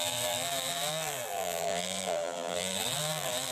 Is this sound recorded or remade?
remade